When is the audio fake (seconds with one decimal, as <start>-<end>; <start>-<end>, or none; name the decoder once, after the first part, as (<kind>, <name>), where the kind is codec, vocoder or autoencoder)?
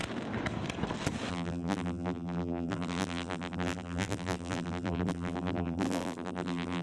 1.3-6.8 (vocoder, BigVGAN v2)